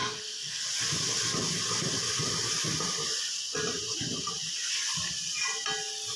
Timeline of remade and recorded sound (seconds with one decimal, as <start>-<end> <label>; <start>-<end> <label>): 0.0-0.6 remade; 0.6-6.2 recorded